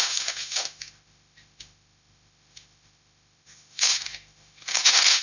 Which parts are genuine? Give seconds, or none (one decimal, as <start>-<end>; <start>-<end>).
none